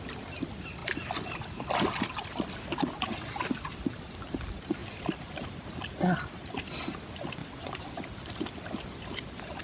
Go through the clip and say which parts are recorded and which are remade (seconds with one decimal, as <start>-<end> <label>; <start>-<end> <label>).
0.0-7.4 recorded; 7.4-8.0 remade; 8.0-9.6 recorded